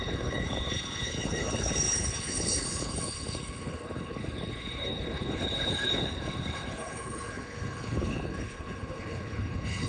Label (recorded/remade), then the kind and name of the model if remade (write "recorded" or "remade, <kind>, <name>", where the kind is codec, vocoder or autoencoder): remade, codec, HILCodec